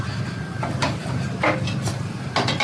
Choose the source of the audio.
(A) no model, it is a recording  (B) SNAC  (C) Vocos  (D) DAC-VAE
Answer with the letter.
A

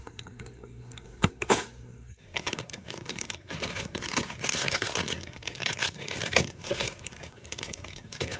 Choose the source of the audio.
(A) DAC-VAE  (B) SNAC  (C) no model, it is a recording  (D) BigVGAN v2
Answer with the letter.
B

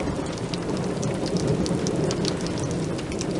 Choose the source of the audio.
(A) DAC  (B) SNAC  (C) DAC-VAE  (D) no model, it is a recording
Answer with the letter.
D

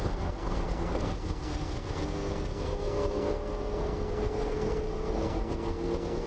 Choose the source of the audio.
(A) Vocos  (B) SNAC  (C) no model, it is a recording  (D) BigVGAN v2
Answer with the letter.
B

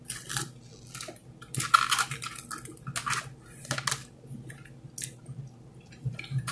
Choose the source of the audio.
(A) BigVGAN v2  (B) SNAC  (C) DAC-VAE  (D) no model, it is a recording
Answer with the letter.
D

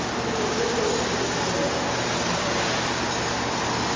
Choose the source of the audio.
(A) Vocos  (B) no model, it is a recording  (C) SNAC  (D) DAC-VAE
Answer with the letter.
B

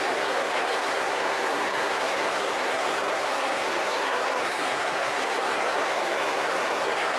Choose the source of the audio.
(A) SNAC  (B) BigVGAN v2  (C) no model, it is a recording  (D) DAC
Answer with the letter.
A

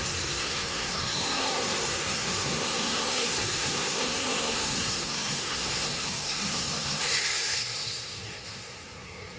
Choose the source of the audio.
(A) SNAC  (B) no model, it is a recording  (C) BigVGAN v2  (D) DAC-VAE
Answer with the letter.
A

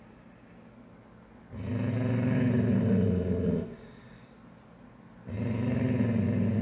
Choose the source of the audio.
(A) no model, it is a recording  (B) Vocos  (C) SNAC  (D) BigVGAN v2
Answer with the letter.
A